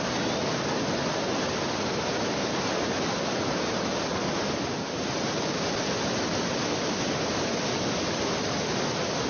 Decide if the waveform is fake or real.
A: real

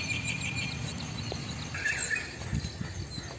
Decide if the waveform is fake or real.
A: real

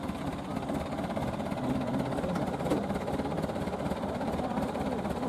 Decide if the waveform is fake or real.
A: fake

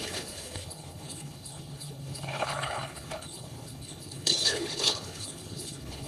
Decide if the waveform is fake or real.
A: fake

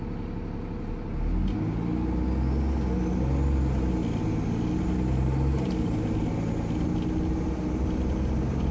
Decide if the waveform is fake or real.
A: real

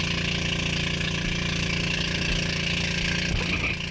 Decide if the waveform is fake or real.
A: real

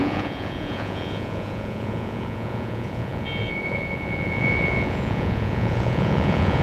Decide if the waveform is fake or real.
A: fake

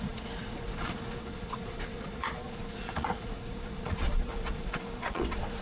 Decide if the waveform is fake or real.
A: fake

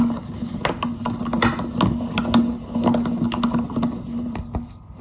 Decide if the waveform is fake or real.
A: real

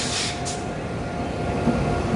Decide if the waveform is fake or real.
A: real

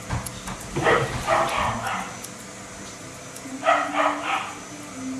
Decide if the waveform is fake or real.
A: real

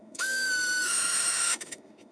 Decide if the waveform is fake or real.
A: fake